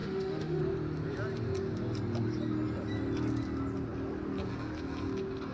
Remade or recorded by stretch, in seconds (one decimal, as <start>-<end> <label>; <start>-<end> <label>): 0.0-0.6 remade; 0.6-5.5 recorded

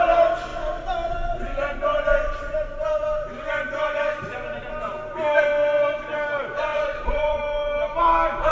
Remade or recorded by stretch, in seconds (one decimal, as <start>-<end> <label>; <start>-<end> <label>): 0.0-6.7 recorded; 6.7-7.4 remade; 7.4-8.5 recorded

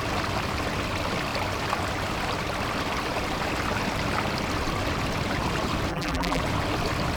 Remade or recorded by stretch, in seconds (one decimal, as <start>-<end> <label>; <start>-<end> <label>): 0.0-5.9 recorded; 5.9-6.4 remade; 6.4-7.2 recorded

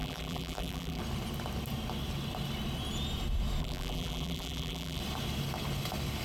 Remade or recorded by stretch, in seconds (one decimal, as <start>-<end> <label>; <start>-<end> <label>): 0.0-1.0 remade; 1.0-3.6 recorded; 3.6-5.0 remade; 5.0-6.2 recorded

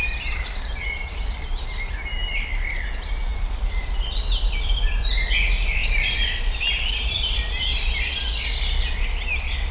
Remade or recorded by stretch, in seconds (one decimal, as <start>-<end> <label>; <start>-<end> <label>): 0.0-3.3 recorded; 3.3-5.1 remade; 5.1-5.8 recorded; 5.8-7.5 remade; 7.5-9.7 recorded

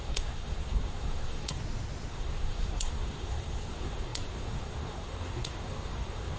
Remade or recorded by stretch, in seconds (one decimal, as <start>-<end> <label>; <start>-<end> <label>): 0.0-1.6 remade; 1.6-2.1 recorded; 2.1-6.4 remade

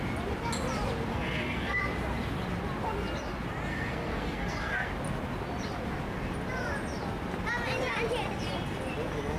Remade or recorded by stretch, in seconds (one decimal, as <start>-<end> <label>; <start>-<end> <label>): 0.0-1.1 recorded; 1.1-1.8 remade; 1.8-3.7 recorded; 3.7-4.9 remade; 4.9-9.4 recorded